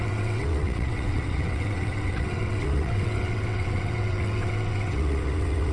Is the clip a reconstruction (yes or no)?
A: yes